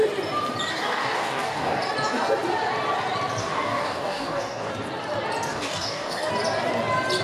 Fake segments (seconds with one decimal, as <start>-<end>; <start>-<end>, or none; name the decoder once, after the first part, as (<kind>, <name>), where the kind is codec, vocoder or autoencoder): 0.7-1.8 (codec, DAC); 3.4-4.7; 5.5-6.3